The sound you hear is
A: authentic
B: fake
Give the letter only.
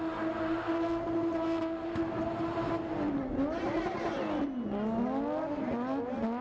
A